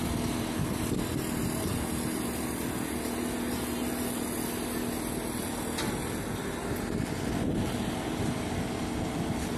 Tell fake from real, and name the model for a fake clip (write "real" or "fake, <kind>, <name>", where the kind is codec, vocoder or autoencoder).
real